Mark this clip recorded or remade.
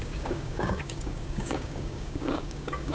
remade